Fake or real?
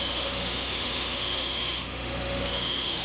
fake